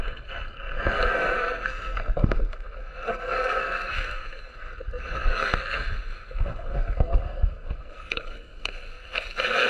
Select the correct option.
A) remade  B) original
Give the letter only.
A